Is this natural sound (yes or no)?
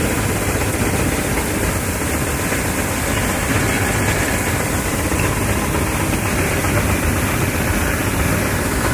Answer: yes